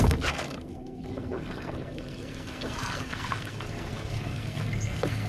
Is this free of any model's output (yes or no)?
no